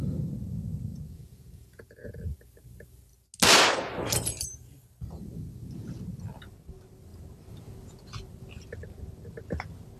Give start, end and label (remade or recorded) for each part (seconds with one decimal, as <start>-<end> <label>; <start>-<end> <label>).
0.0-0.9 recorded; 0.9-2.2 remade; 2.2-10.0 recorded